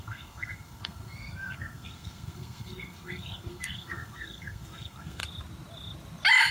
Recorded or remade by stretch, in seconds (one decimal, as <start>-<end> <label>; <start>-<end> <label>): 0.0-5.2 remade; 5.2-6.5 recorded